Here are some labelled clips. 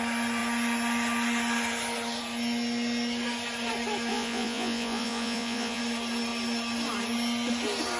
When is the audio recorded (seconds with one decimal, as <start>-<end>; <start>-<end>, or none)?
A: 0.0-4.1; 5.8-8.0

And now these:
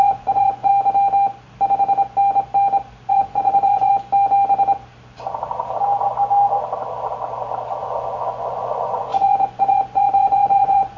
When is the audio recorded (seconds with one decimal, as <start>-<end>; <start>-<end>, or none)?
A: 0.7-3.1; 3.9-7.8

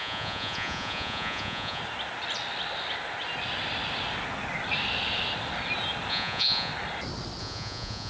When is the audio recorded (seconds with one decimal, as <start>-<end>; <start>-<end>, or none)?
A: 1.8-6.1; 6.7-7.4